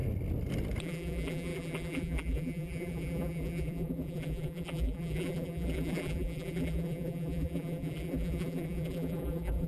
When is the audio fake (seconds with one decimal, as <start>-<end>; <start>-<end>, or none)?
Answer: 0.8-9.7

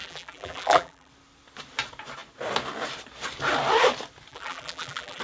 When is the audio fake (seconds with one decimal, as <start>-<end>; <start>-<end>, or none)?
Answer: 0.0-1.1; 4.3-5.2

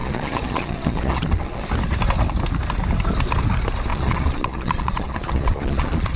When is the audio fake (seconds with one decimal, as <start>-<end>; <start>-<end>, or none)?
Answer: 0.0-1.6; 3.9-6.2

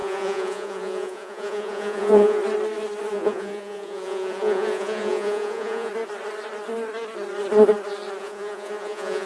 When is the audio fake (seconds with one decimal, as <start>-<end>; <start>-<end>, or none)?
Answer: 0.0-2.4; 3.1-5.9; 8.2-9.3